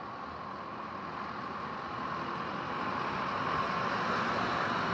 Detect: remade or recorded recorded